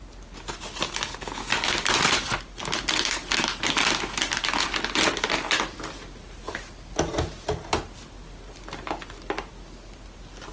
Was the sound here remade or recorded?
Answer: recorded